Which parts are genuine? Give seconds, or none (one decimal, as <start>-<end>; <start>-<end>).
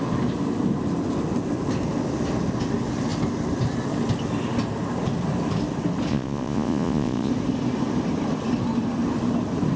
0.0-6.1; 7.3-9.8